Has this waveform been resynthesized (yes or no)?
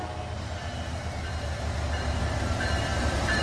no